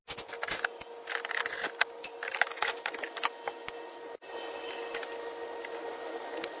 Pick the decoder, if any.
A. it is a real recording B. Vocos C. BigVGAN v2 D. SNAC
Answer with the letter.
A